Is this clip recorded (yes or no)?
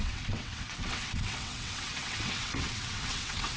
no